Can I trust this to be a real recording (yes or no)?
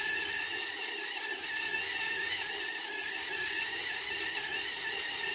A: yes